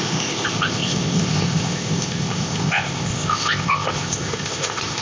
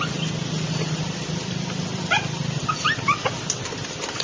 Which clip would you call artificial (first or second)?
first